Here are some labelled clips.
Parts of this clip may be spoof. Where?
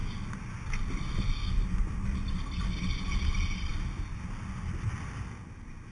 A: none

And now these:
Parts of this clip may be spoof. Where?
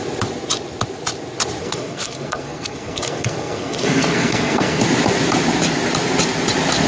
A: 1.6-4.8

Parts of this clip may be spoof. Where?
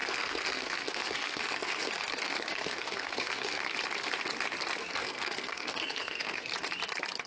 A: 0.0-3.6; 4.8-6.5